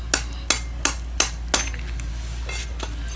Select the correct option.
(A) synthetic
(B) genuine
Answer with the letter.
B